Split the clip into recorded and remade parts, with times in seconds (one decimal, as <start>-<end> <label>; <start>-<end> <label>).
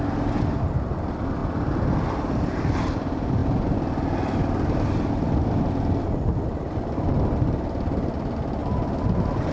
0.0-9.5 recorded